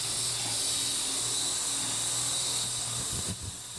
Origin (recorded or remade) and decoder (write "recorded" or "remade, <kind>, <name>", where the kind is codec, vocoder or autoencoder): recorded